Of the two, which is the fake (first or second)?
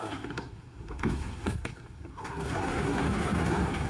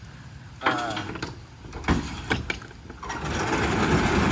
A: first